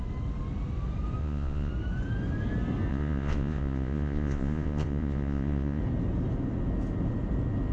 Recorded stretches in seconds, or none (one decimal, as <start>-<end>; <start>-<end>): 0.0-1.2; 1.7-2.9; 5.8-7.7